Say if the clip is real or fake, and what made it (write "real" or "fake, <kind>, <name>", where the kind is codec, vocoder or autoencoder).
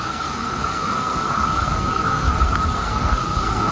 fake, codec, SNAC